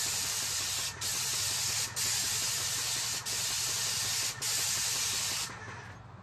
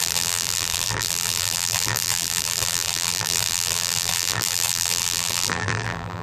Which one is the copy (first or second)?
second